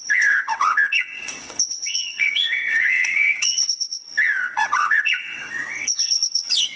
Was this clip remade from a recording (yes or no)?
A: yes